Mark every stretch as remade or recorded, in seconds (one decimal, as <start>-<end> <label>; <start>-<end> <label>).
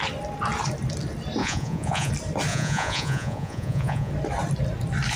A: 0.0-1.4 recorded; 1.4-2.1 remade; 2.1-2.5 recorded; 2.5-4.1 remade; 4.1-5.2 recorded